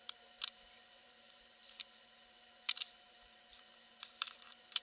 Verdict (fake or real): fake